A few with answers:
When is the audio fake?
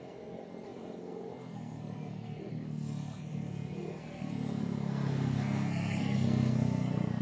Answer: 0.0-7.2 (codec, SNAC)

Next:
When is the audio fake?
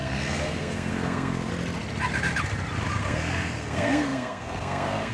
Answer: 0.0-1.5 (codec, SNAC); 3.0-5.1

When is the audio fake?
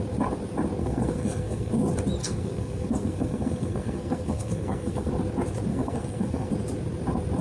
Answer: 0.8-1.7 (codec, SNAC); 2.2-5.1; 5.7-6.5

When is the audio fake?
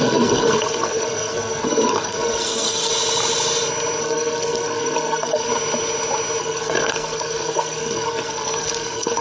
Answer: 0.0-2.9 (codec, SNAC); 4.0-5.5; 6.4-9.2